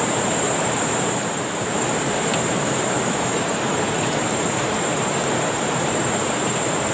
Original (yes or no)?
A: no